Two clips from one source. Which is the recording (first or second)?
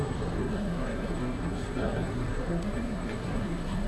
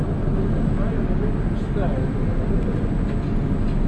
second